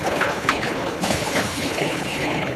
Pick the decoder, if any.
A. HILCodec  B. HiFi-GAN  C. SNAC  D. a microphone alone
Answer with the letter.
A